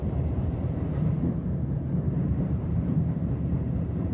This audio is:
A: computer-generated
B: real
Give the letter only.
A